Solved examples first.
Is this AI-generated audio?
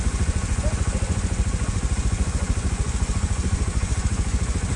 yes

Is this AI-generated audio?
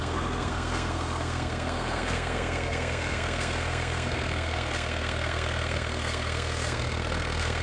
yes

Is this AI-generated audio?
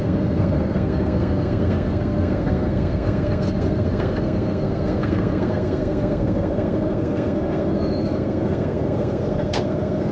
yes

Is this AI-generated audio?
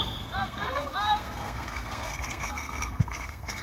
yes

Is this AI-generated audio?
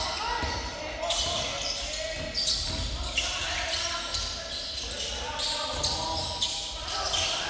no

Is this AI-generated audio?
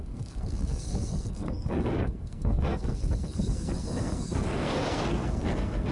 yes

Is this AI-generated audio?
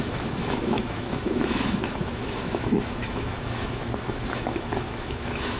yes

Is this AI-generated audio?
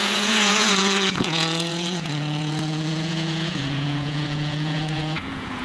yes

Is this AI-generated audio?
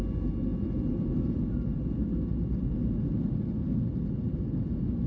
no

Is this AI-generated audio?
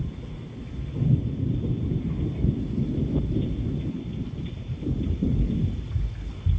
no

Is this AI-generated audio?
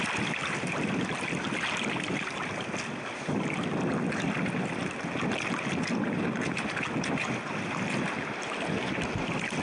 no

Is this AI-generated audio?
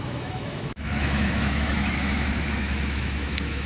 yes